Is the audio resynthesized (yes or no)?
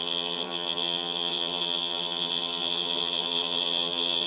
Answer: yes